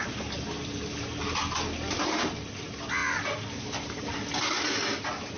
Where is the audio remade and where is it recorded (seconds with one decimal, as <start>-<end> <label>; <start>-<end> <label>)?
0.0-5.4 recorded